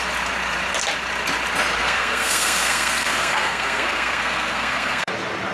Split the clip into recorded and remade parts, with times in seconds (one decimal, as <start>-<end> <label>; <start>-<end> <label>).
0.0-1.8 recorded; 1.8-5.1 remade; 5.1-5.5 recorded